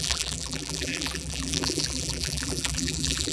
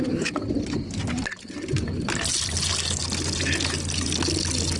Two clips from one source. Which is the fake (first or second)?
first